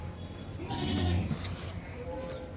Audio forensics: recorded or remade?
recorded